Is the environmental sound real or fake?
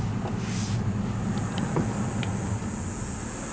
real